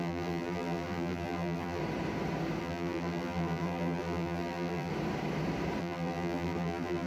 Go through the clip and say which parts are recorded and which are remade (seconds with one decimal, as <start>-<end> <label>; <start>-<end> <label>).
0.0-1.8 remade; 1.8-2.6 recorded; 2.6-4.9 remade; 4.9-5.8 recorded; 5.8-7.1 remade